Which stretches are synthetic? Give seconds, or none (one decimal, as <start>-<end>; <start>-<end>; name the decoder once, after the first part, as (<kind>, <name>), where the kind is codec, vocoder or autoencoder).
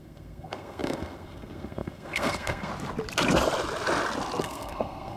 0.0-2.7 (codec, SNAC); 4.4-5.2